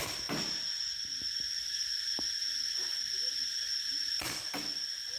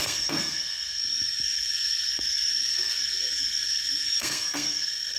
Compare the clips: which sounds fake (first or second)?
second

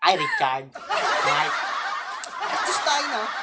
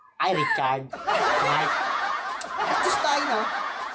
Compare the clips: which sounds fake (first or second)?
second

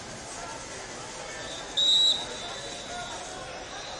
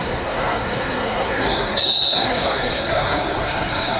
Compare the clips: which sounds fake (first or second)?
second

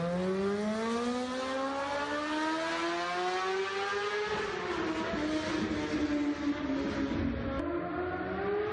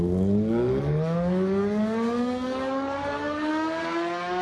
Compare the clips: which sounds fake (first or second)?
second